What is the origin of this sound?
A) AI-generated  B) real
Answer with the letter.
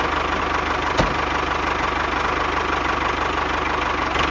B